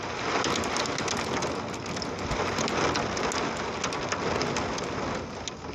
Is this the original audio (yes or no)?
yes